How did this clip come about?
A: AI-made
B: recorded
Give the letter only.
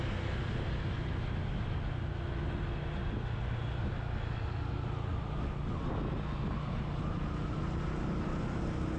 B